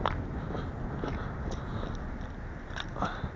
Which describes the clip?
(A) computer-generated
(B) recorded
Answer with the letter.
B